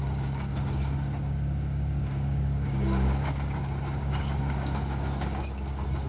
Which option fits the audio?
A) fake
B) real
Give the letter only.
A